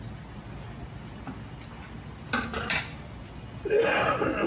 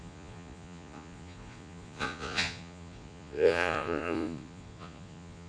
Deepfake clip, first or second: second